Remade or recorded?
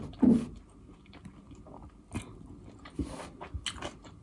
recorded